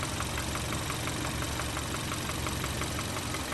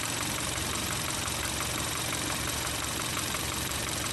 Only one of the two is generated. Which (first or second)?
second